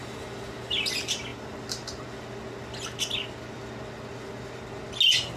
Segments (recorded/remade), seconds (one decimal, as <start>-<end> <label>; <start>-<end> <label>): 0.0-5.4 recorded